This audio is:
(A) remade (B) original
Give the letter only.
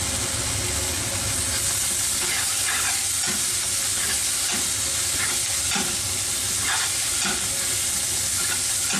B